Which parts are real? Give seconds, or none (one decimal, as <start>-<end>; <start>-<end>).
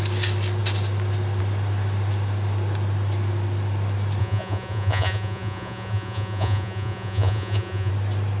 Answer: 0.0-4.2; 7.9-8.4